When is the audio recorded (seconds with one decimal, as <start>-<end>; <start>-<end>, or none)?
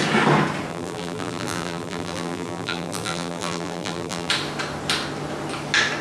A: 0.0-0.7; 4.3-6.0